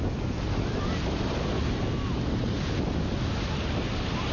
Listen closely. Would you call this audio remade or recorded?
recorded